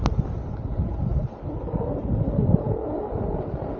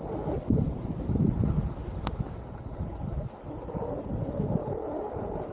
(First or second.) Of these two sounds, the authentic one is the first